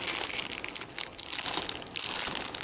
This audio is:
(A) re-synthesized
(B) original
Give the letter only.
B